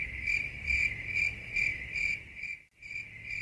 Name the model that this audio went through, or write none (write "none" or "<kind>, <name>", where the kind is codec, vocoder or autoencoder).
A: none